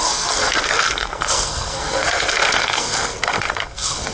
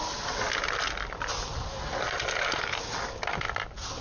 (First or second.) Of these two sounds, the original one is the second